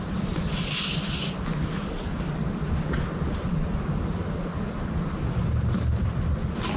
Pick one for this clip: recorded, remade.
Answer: recorded